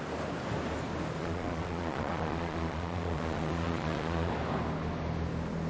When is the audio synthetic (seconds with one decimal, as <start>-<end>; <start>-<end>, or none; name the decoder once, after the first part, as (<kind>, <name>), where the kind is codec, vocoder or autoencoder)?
1.2-4.3 (vocoder, Vocos)